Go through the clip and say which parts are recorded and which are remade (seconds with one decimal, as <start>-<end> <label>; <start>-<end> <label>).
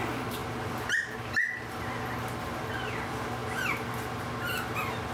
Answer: 0.0-5.1 recorded